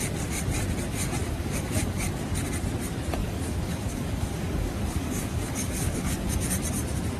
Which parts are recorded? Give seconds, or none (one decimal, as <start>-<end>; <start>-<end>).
0.0-1.2; 2.2-3.2; 6.5-7.2